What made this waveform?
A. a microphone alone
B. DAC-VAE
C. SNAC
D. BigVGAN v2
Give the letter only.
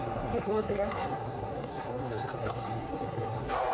C